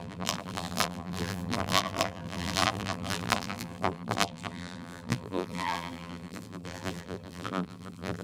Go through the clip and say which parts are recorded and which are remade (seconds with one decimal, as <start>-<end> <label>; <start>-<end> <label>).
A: 0.0-8.2 remade